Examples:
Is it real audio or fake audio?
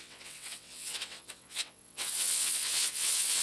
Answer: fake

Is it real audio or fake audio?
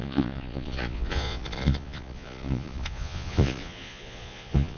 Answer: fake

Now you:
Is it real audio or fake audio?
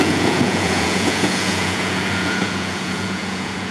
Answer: fake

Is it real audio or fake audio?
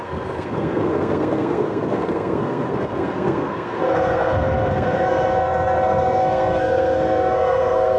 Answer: fake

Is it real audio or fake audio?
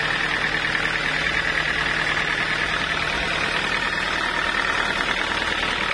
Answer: real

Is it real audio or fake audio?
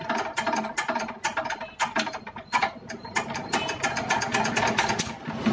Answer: real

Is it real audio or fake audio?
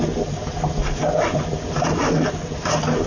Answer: real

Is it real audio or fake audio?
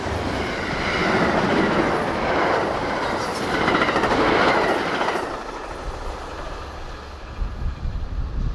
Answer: real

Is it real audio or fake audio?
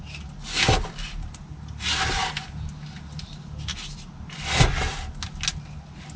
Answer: real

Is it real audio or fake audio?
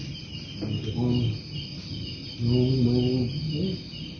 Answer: real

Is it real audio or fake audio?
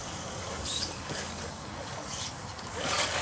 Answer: fake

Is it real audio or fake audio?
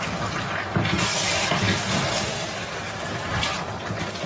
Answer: real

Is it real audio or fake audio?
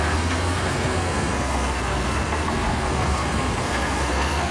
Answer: fake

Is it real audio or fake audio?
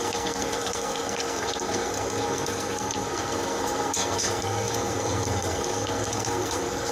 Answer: fake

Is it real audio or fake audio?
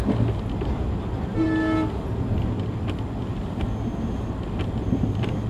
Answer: real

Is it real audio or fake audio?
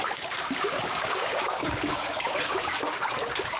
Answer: fake